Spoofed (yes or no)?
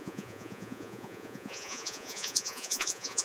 yes